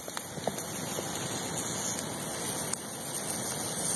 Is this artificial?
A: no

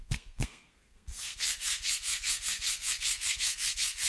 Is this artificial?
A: yes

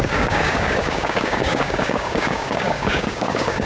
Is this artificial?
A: yes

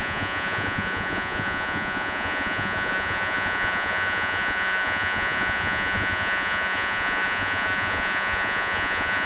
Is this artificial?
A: yes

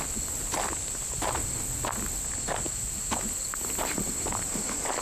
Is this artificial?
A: no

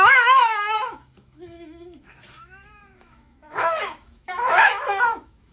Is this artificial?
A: yes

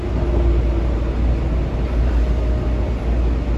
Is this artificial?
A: no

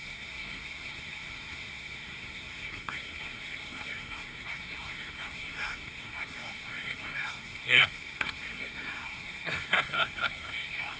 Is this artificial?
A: yes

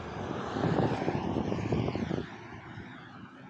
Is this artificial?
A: no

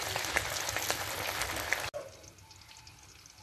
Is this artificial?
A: no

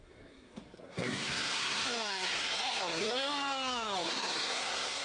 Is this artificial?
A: yes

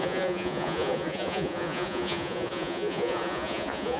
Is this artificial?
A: yes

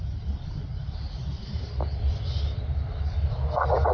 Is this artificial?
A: no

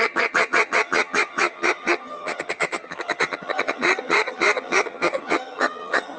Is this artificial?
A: yes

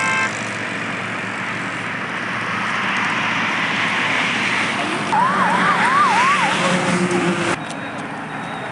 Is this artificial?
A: no